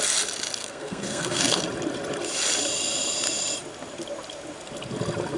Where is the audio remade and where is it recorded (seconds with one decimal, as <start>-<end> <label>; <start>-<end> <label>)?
0.0-0.6 recorded; 0.6-1.6 remade; 1.6-5.4 recorded